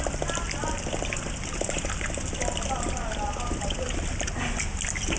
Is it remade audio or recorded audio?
recorded